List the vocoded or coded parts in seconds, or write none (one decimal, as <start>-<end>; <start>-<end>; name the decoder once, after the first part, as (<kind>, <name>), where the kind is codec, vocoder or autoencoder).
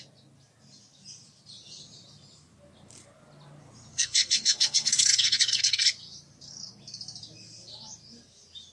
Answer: 3.9-5.9 (codec, SNAC)